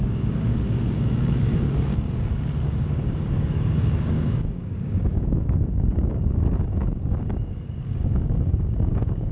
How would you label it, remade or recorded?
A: remade